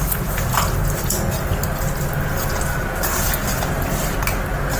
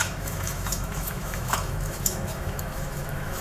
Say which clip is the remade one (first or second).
second